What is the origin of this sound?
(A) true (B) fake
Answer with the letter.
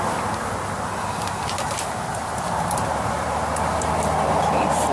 A